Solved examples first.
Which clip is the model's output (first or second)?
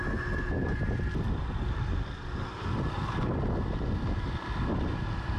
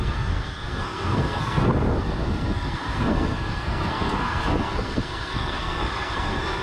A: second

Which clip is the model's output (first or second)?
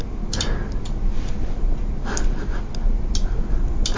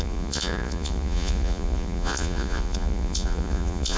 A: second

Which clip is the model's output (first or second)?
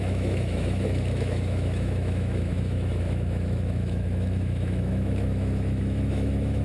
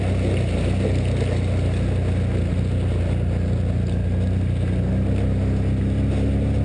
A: first